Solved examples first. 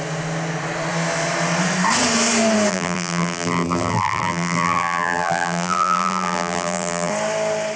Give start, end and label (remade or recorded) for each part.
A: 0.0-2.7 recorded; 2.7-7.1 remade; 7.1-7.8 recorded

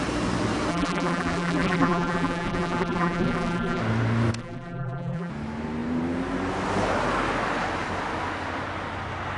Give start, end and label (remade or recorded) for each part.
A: 0.0-0.7 recorded; 0.7-3.8 remade; 3.8-4.4 recorded; 4.4-5.3 remade; 5.3-9.4 recorded

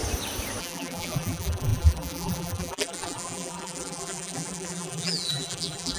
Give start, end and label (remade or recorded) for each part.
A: 0.0-0.6 recorded; 0.6-6.0 remade

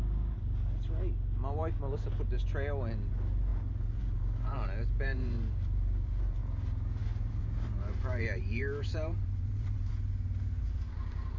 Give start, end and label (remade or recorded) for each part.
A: 0.0-3.5 recorded; 3.5-6.4 remade; 6.4-7.0 recorded; 7.0-9.9 remade; 9.9-11.4 recorded

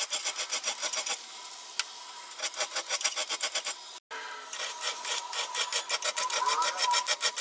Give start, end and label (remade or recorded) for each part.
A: 0.0-0.8 recorded; 0.8-1.3 remade; 1.3-7.4 recorded

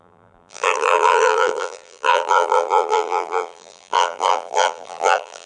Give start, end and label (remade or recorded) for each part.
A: 0.0-5.5 remade

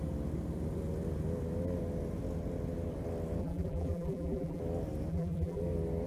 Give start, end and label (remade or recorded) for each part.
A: 0.0-3.4 recorded; 3.4-4.6 remade; 4.6-5.1 recorded; 5.1-5.6 remade; 5.6-6.1 recorded

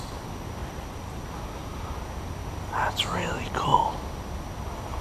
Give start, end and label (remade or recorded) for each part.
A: 0.0-0.6 recorded; 0.6-1.2 remade; 1.2-5.0 recorded